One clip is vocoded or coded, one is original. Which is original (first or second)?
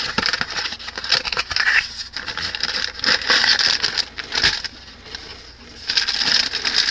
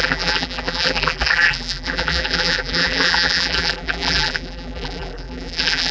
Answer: first